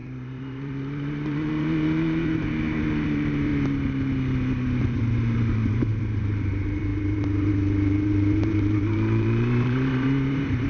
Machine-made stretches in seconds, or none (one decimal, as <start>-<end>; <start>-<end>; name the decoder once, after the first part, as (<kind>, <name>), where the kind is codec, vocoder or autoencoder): 0.0-3.5 (vocoder, BigVGAN v2); 4.8-10.7